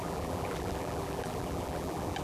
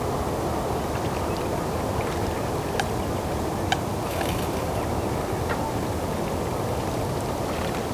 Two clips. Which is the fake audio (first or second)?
first